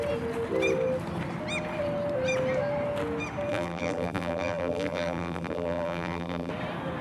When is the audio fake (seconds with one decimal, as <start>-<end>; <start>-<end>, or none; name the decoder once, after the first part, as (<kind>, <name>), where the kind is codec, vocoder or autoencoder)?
3.5-6.5 (vocoder, BigVGAN v2)